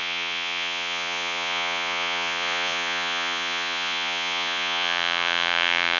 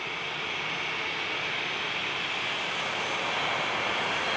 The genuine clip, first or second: second